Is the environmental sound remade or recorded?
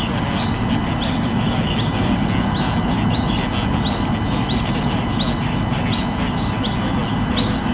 recorded